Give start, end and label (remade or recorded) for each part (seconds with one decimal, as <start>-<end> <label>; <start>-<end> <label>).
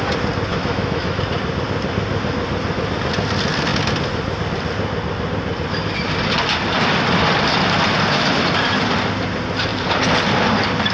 0.0-0.5 recorded; 0.5-1.2 remade; 1.2-10.9 recorded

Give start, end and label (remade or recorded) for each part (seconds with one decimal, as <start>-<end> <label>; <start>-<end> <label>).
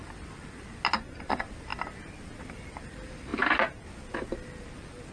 0.0-5.1 recorded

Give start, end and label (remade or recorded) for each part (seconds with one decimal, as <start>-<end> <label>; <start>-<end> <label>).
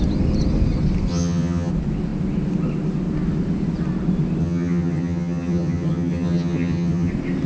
0.0-1.1 recorded; 1.1-1.7 remade; 1.7-4.4 recorded; 4.4-7.1 remade; 7.1-7.5 recorded